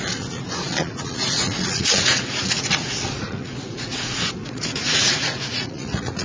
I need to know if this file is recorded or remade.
remade